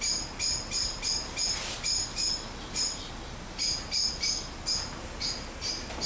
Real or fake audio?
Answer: real